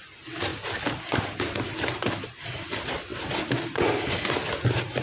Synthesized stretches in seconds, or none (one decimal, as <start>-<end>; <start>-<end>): none